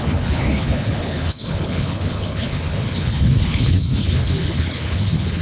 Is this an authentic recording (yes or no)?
no